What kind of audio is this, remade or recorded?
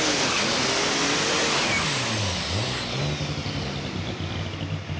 recorded